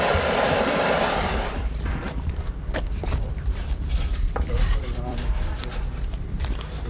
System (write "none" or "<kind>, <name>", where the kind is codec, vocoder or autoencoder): vocoder, BigVGAN v2